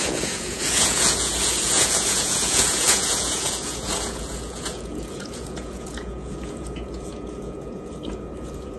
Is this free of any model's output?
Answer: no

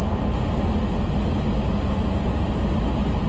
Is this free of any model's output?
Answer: yes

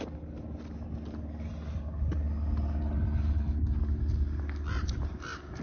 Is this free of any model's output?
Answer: yes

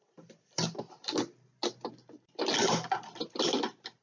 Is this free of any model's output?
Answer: yes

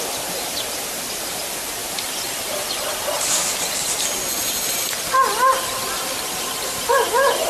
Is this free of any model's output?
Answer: yes